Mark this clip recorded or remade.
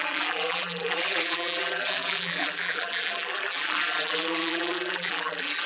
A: remade